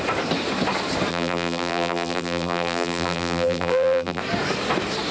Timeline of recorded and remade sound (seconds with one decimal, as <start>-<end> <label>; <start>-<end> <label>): 0.0-1.1 recorded; 1.1-4.2 remade; 4.2-5.1 recorded